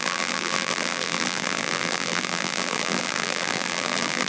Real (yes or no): no